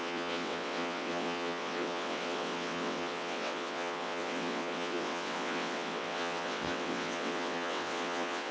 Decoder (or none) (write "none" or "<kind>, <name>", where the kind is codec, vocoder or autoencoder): vocoder, WaveNeXt